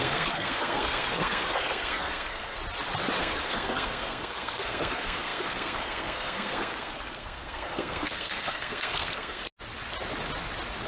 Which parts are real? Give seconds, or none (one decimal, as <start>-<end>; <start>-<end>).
2.6-3.2; 9.4-10.9